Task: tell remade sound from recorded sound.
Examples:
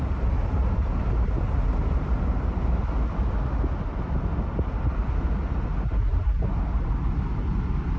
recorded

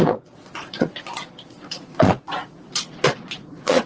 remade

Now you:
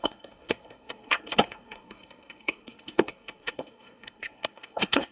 remade